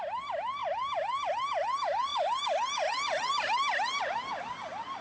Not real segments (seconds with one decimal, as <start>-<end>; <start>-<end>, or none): none